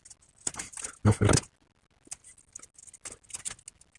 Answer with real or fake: real